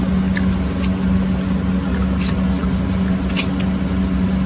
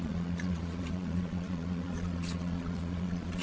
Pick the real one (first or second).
first